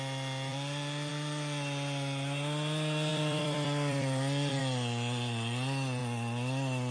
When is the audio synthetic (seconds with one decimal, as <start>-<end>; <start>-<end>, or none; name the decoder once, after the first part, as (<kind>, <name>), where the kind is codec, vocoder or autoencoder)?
0.5-1.1 (vocoder, BigVGAN v2); 3.1-4.6